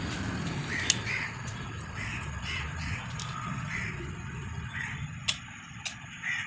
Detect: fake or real real